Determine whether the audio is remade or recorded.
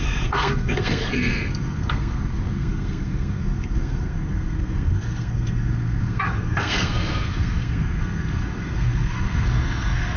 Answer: remade